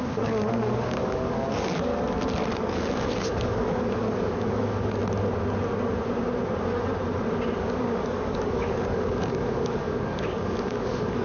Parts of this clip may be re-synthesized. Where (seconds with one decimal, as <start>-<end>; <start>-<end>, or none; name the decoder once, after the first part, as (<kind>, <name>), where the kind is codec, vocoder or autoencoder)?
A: 0.0-1.9 (codec, DAC); 2.5-5.0; 7.6-11.2